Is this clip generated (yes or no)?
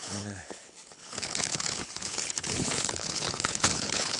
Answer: yes